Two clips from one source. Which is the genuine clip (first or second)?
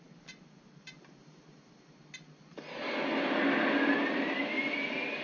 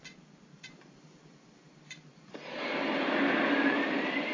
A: first